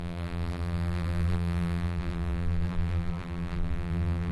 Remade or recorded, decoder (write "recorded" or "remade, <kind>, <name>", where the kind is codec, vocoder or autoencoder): remade, vocoder, BigVGAN v2